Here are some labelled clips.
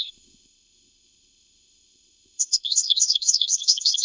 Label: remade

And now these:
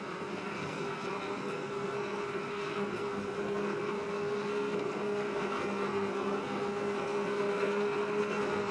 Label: remade